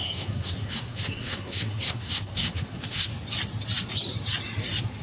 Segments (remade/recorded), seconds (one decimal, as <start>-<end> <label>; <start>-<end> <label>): 0.0-3.1 remade; 3.1-5.0 recorded